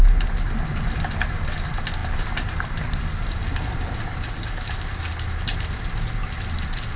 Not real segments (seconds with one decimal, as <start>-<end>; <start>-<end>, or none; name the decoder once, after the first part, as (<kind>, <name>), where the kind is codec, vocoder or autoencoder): none